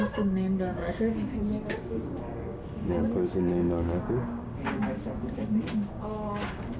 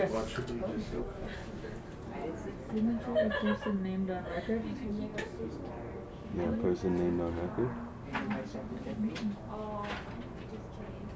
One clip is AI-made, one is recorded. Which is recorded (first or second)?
second